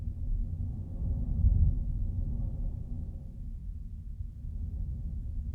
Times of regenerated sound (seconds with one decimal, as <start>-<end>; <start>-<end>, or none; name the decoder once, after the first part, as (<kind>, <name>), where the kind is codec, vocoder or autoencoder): 3.6-4.3 (vocoder, Vocos)